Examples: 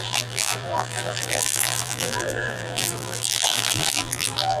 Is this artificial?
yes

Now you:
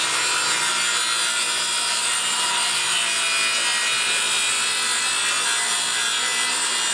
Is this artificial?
no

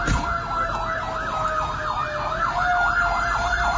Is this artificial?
no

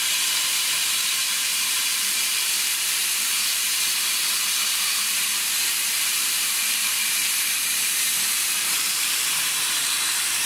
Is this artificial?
yes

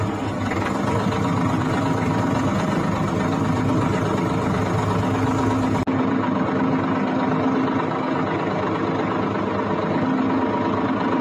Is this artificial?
no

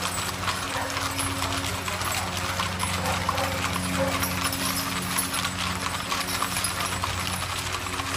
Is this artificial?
no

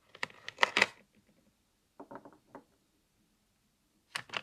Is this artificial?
no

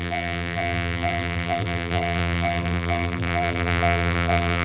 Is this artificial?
yes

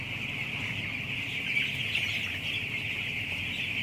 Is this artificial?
no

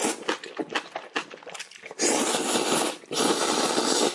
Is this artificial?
no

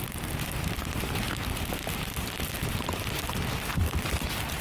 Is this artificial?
yes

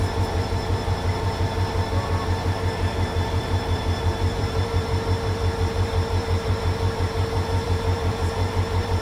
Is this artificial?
yes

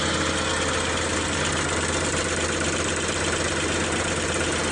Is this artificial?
no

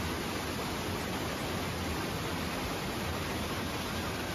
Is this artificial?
no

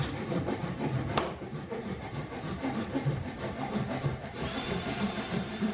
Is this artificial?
yes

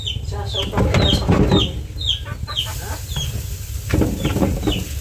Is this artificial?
no